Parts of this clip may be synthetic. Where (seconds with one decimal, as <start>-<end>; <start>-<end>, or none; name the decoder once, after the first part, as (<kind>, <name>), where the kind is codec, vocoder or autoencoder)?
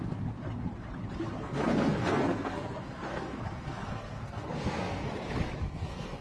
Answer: 1.4-5.1 (codec, SNAC); 5.6-6.2